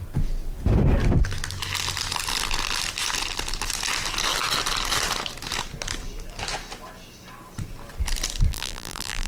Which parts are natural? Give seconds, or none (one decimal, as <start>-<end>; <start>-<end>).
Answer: 0.0-8.5